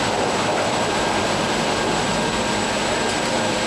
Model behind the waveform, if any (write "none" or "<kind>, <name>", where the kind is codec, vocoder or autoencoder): vocoder, BigVGAN v2